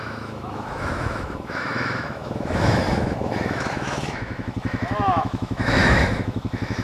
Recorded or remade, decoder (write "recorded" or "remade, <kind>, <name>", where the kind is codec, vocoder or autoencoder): remade, autoencoder, DAC-VAE